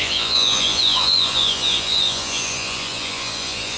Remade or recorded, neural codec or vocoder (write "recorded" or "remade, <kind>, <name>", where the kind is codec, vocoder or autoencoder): remade, vocoder, Vocos